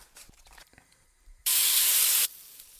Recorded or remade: remade